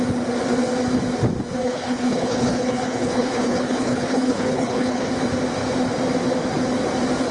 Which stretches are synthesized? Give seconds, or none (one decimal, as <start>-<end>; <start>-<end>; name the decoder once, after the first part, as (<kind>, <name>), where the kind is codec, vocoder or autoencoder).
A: 1.6-5.1 (codec, HILCodec)